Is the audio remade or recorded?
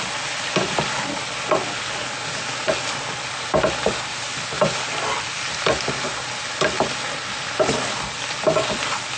recorded